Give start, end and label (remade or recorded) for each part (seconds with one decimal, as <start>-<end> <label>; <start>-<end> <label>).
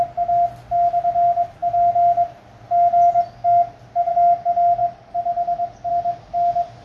0.0-6.8 recorded